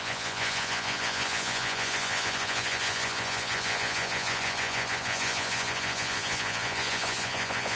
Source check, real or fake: fake